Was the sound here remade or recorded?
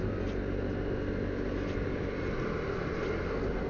recorded